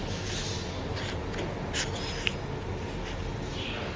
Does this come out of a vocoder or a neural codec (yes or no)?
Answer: no